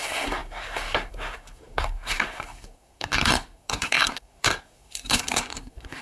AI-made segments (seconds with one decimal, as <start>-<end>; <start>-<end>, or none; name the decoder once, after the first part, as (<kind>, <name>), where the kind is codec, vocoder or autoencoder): 0.0-6.0 (codec, SNAC)